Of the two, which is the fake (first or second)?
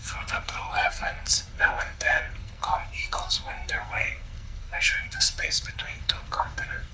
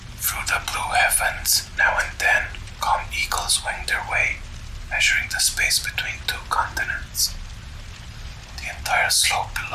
first